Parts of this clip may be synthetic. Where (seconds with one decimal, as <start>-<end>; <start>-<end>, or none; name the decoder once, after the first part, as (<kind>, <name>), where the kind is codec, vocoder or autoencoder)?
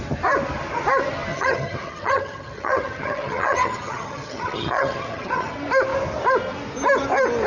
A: 1.3-5.5 (vocoder, HiFi-GAN)